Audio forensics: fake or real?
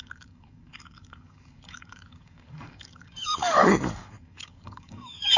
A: fake